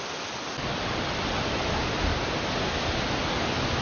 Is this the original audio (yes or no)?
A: yes